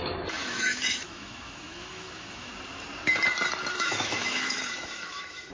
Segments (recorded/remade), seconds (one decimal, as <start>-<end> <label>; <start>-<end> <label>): 0.0-2.5 remade; 2.5-3.7 recorded; 3.7-5.5 remade